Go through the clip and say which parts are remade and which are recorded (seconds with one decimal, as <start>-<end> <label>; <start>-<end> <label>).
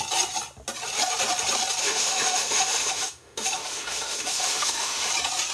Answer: 0.0-1.8 recorded; 1.8-5.1 remade; 5.1-5.5 recorded